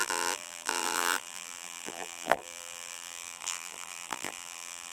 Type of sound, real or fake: fake